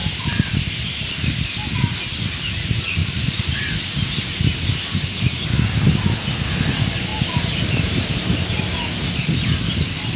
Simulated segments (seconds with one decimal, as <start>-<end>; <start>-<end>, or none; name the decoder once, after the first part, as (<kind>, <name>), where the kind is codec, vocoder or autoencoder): 0.0-0.5 (vocoder, BigVGAN v2); 3.0-3.7; 7.1-8.2